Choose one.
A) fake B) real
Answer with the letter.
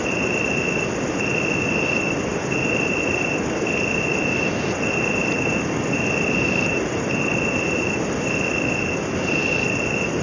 B